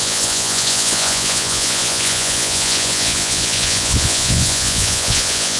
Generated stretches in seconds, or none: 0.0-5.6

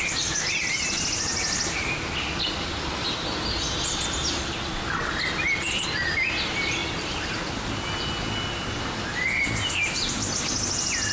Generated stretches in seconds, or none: none

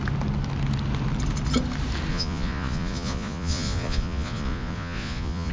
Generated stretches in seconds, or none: 2.1-5.5

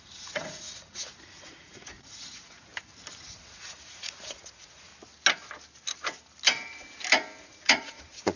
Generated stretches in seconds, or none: 0.0-2.7; 3.4-4.9; 7.4-8.4